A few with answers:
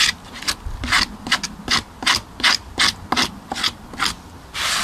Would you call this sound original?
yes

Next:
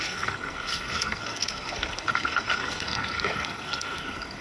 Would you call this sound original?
no